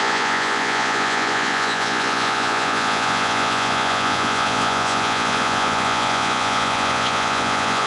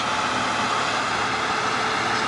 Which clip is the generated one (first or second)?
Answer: first